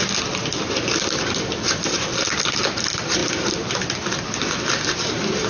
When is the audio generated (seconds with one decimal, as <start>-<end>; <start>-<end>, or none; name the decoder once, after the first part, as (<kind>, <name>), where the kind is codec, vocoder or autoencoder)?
0.0-2.1 (vocoder, BigVGAN v2); 2.8-5.5

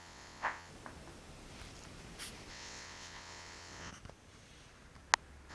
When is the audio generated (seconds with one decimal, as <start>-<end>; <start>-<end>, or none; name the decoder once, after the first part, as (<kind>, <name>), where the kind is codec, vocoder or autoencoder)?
0.0-0.7 (vocoder, WaveNeXt); 2.5-3.9